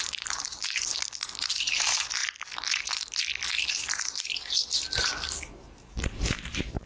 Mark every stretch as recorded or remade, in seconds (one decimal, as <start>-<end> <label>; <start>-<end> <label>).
0.0-0.9 remade; 0.9-1.4 recorded; 1.4-2.2 remade; 2.2-3.7 recorded; 3.7-5.1 remade; 5.1-5.6 recorded; 5.6-6.9 remade